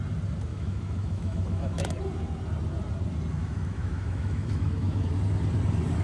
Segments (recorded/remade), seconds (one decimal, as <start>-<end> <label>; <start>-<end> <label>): 0.0-0.5 recorded; 0.5-1.9 remade; 1.9-3.4 recorded; 3.4-5.1 remade; 5.1-6.0 recorded

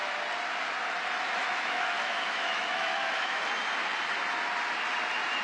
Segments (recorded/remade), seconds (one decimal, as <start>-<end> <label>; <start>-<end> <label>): 0.0-1.4 recorded; 1.4-3.4 remade; 3.4-5.4 recorded

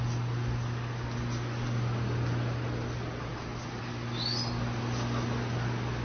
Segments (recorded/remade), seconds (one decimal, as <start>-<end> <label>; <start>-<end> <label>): 0.0-6.0 recorded

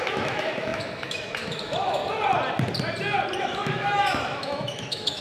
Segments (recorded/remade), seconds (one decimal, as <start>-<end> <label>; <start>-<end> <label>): 0.0-2.0 remade; 2.0-3.4 recorded; 3.4-5.2 remade

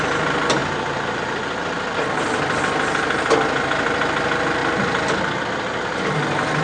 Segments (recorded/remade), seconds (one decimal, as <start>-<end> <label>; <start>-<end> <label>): 0.0-6.6 recorded

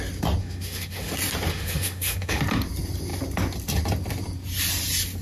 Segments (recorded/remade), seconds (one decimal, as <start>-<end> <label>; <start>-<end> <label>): 0.0-0.4 recorded; 0.4-1.1 remade; 1.1-1.5 recorded; 1.5-2.4 remade; 2.4-5.2 recorded

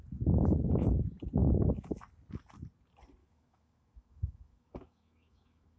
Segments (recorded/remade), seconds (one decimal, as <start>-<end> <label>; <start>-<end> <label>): 0.0-1.4 recorded; 1.4-2.0 remade; 2.0-3.2 recorded; 3.2-5.8 remade

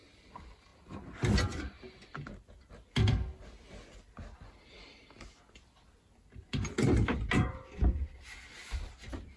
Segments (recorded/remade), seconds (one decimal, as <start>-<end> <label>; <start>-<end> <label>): 0.0-9.4 recorded